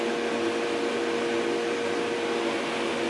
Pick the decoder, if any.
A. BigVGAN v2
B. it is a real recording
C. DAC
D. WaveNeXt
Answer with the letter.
B